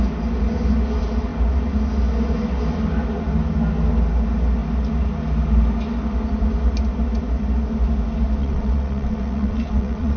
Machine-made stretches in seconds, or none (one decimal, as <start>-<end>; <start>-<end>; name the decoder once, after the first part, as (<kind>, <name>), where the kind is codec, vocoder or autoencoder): 8.4-10.2 (vocoder, WaveNeXt)